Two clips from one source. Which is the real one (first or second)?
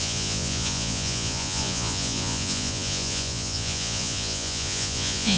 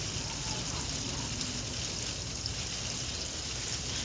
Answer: second